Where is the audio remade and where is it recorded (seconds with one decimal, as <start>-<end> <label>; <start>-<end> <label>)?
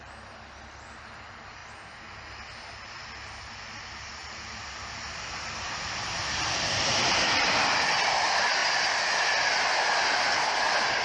0.0-1.6 remade; 1.6-2.9 recorded; 2.9-8.6 remade; 8.6-11.0 recorded